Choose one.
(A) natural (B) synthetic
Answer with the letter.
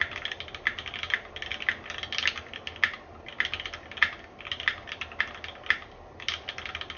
A